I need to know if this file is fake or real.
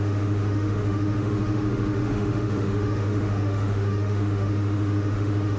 fake